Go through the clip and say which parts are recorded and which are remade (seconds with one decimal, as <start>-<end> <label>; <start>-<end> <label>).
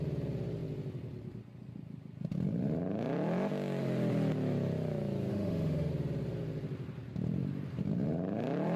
0.0-5.3 recorded; 5.3-5.9 remade; 5.9-8.8 recorded